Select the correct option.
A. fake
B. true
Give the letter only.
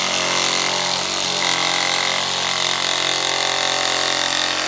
B